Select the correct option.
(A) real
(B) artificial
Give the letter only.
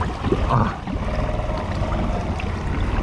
A